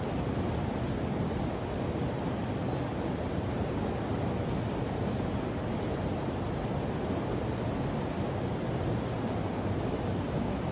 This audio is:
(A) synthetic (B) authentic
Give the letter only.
B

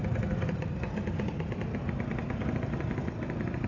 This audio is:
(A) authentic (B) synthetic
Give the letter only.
A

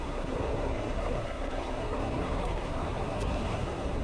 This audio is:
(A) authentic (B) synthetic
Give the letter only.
B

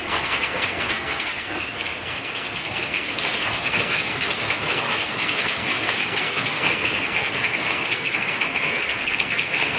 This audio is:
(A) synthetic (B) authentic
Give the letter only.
A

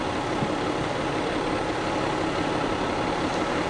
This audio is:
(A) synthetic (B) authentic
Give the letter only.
B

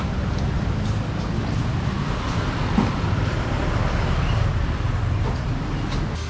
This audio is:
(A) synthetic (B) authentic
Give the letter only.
B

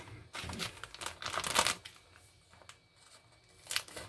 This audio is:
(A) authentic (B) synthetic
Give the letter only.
A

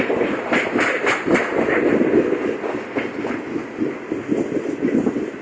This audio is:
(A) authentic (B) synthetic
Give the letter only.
A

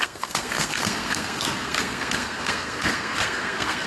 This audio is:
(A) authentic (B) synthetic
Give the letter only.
B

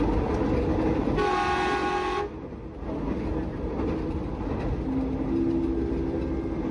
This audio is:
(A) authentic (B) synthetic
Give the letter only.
A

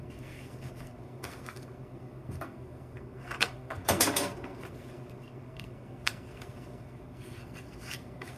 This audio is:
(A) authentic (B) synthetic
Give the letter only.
B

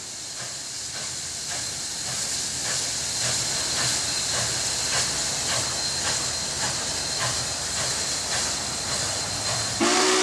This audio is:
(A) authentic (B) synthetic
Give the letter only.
A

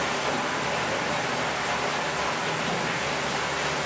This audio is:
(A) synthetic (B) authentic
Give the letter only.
B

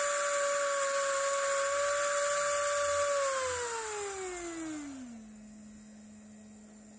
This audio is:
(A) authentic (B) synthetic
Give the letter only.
A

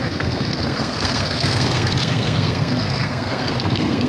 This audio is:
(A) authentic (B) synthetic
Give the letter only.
B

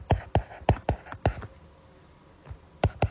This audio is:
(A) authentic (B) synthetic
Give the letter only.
A